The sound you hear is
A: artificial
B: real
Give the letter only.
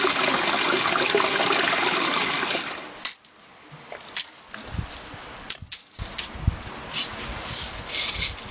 B